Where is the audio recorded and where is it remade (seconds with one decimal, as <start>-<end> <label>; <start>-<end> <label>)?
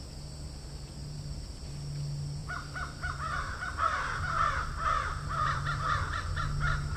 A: 0.0-1.0 recorded; 1.0-1.7 remade; 1.7-2.4 recorded; 2.4-5.6 remade; 5.6-7.0 recorded